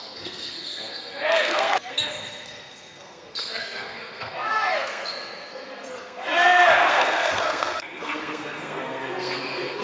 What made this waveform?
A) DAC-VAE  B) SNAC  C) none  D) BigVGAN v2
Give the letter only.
B